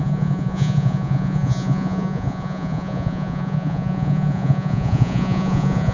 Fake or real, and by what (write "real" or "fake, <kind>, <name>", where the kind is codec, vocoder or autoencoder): fake, vocoder, Vocos